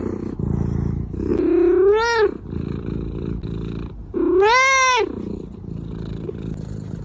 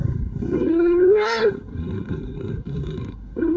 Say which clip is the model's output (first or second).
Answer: second